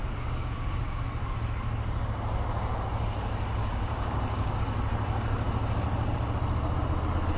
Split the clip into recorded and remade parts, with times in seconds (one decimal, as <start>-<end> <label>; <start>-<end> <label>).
0.0-1.0 remade; 1.0-3.6 recorded; 3.6-4.6 remade; 4.6-7.4 recorded